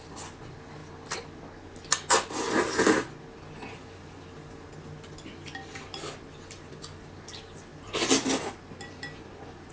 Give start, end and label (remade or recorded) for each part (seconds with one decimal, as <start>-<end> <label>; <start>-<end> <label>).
0.0-9.7 recorded